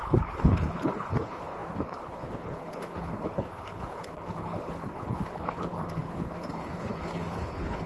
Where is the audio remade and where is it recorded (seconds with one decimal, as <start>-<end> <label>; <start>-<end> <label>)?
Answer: 0.0-7.9 remade